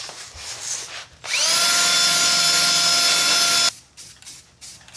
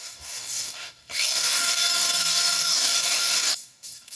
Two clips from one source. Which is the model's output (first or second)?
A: second